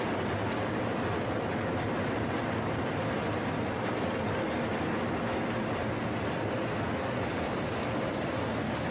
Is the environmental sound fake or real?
real